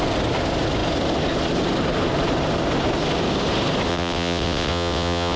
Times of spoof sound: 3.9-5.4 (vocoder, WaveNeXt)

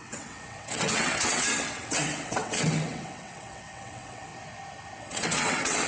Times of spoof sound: 0.0-4.3 (vocoder, WaveNeXt); 5.0-5.9

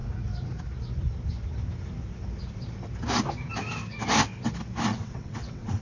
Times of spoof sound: 4.9-5.8 (vocoder, WaveNeXt)

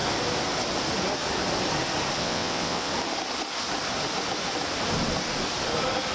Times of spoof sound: 2.2-2.9 (vocoder, WaveNeXt)

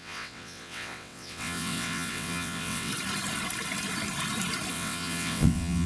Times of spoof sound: 0.0-2.9 (vocoder, WaveNeXt); 4.7-5.9

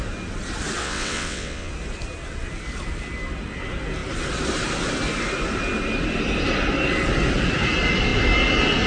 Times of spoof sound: 0.8-1.7 (vocoder, WaveNeXt)

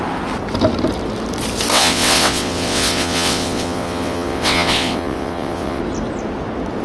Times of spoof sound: 1.7-5.8 (vocoder, WaveNeXt)

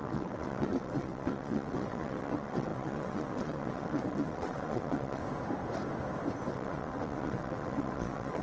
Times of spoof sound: 0.0-5.2 (vocoder, WaveNeXt); 6.5-8.4